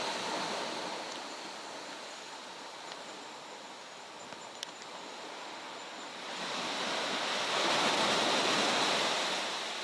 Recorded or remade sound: recorded